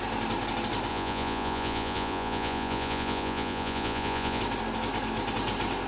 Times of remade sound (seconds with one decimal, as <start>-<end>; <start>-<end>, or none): 0.9-4.4